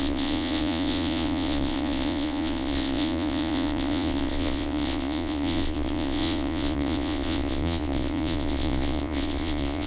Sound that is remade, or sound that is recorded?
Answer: remade